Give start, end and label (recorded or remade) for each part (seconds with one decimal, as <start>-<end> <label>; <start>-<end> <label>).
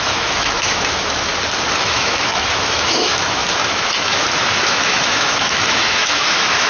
0.0-1.3 remade; 1.3-1.8 recorded; 1.8-6.7 remade